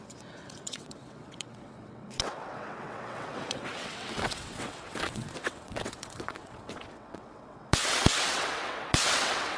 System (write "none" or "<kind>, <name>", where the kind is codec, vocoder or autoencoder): vocoder, WaveNeXt